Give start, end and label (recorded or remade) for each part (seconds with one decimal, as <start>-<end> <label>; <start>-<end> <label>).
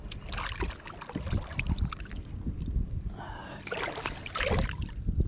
0.0-1.9 recorded; 1.9-3.4 remade; 3.4-4.3 recorded; 4.3-5.3 remade